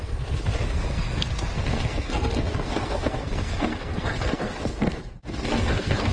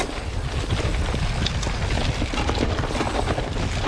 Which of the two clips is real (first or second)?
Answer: second